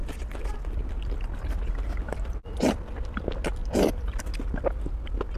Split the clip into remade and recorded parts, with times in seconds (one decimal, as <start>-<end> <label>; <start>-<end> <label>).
0.0-3.2 remade; 3.2-3.6 recorded; 3.6-4.2 remade; 4.2-5.4 recorded

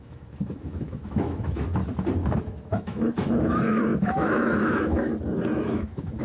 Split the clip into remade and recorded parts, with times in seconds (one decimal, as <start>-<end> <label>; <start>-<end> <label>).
0.0-1.8 remade; 1.8-2.4 recorded; 2.4-5.1 remade; 5.1-5.6 recorded; 5.6-6.2 remade

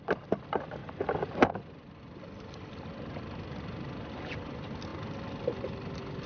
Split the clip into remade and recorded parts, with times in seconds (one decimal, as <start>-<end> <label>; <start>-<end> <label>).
0.0-6.3 recorded